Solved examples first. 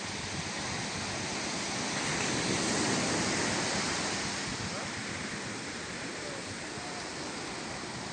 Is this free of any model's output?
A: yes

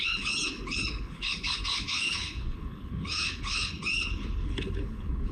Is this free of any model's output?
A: no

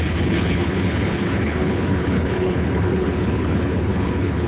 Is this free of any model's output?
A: no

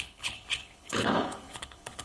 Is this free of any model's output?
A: no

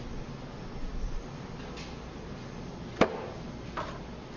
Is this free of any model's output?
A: yes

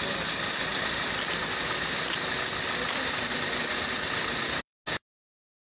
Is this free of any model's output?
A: yes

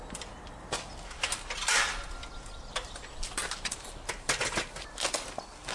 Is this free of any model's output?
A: yes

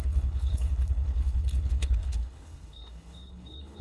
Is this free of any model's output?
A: no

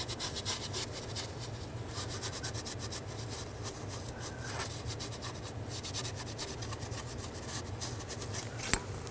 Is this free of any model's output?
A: yes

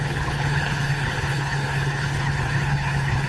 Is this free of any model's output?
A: no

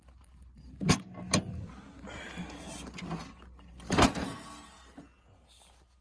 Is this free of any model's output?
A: yes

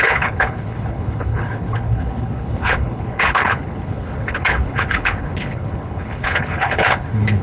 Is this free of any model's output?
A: no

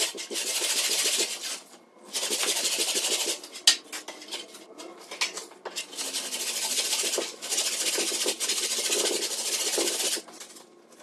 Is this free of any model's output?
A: yes